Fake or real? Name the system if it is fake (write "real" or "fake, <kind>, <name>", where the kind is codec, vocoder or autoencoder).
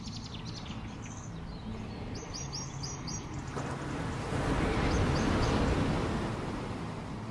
real